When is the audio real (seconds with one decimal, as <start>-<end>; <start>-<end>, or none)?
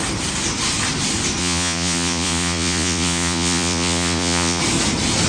0.0-1.4; 4.6-5.3